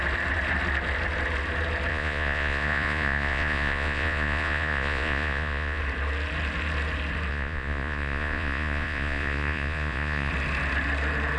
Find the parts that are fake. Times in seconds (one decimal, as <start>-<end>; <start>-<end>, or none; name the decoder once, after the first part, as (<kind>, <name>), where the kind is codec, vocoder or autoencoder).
1.9-5.8 (vocoder, Vocos); 7.3-10.3